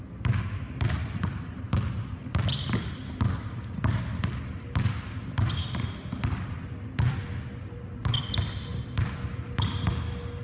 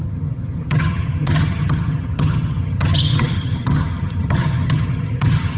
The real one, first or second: first